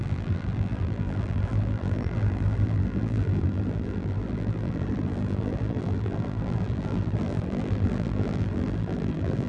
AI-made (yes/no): yes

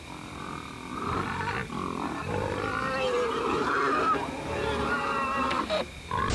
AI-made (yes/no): no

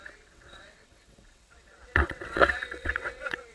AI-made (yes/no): yes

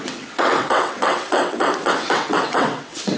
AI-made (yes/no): yes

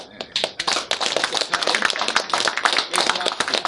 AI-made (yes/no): no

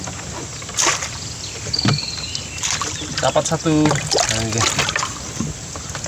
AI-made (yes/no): no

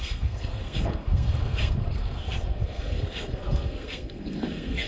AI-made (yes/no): yes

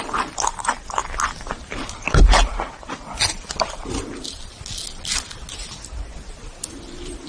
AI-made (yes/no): no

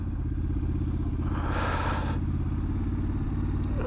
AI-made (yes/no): no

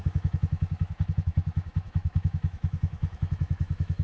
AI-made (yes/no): yes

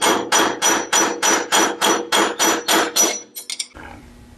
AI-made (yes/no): no